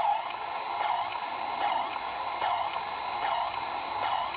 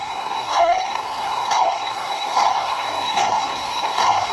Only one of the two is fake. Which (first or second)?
second